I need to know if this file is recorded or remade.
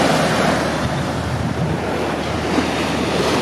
remade